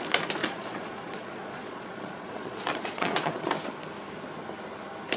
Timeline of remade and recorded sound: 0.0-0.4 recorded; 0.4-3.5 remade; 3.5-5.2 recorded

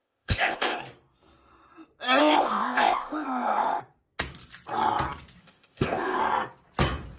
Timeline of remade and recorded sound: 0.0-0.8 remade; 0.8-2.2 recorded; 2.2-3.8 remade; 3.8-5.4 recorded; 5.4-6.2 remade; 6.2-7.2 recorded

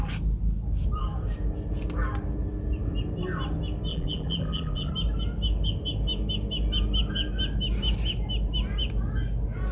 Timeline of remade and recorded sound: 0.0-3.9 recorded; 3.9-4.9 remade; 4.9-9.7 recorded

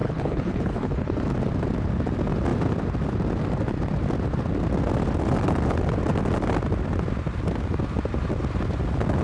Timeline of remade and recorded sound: 0.0-1.2 remade; 1.2-9.2 recorded

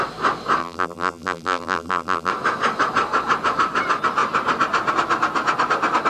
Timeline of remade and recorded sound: 0.0-0.6 recorded; 0.6-2.3 remade; 2.3-6.1 recorded